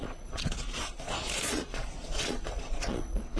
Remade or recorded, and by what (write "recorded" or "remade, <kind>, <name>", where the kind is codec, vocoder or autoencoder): remade, vocoder, Vocos